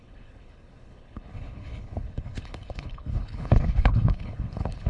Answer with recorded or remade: remade